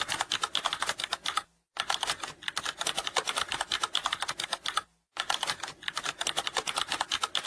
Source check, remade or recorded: recorded